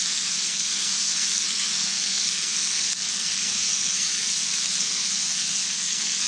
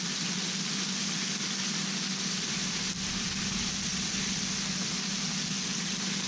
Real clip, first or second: second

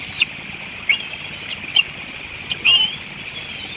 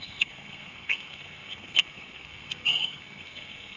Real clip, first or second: first